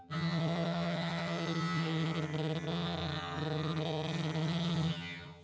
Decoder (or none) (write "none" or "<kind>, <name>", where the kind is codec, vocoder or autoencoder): vocoder, HiFi-GAN